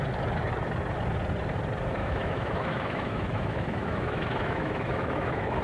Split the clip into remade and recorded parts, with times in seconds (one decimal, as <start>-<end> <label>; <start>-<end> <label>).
0.0-2.0 recorded; 2.0-5.6 remade